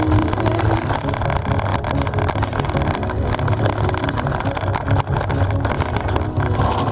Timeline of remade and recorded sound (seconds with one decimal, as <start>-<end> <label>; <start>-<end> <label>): 0.0-6.9 recorded

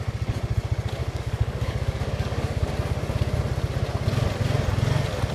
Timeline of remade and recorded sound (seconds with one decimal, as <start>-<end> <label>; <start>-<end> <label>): 0.0-1.0 recorded; 1.0-2.7 remade; 2.7-5.3 recorded

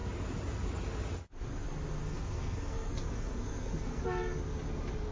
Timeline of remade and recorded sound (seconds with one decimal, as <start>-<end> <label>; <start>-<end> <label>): 0.0-2.0 recorded; 2.0-4.0 remade; 4.0-5.1 recorded

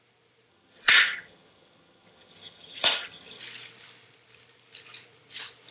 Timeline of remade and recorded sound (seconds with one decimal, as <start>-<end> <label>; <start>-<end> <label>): 0.0-0.5 recorded; 0.5-3.4 remade; 3.4-5.7 recorded

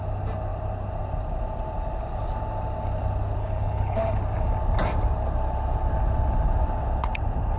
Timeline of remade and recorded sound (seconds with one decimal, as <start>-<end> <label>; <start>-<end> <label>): 0.0-3.4 recorded; 3.4-4.2 remade; 4.2-7.6 recorded

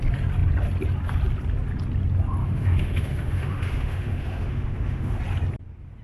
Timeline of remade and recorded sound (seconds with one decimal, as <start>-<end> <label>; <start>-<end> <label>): 0.0-2.4 recorded; 2.4-5.2 remade; 5.2-6.0 recorded